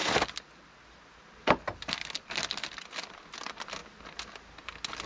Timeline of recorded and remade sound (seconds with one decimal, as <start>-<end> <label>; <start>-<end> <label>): 0.0-5.1 recorded